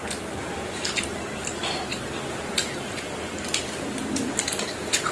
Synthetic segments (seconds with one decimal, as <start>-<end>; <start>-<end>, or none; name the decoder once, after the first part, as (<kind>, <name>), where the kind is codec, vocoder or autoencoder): none